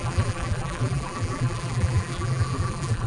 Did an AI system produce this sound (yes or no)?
yes